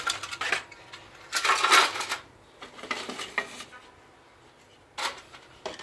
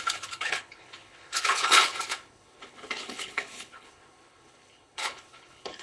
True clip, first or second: first